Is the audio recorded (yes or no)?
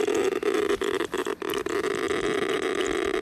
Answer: no